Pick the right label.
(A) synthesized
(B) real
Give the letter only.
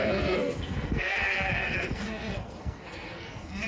A